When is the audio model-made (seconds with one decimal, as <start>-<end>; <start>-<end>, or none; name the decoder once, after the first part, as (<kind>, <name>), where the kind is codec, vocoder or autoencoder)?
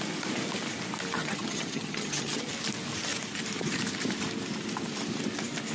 1.2-2.5 (vocoder, HiFi-GAN)